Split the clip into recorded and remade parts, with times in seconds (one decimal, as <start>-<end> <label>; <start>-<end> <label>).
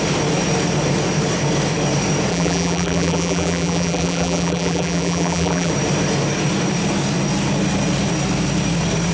0.0-2.3 recorded; 2.3-5.7 remade; 5.7-9.1 recorded